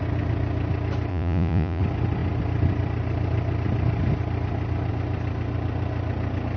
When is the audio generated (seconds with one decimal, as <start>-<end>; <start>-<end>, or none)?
1.1-1.8